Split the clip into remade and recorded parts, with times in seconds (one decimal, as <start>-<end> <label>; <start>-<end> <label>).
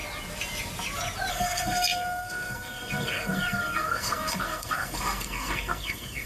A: 0.0-1.3 recorded; 1.3-6.3 remade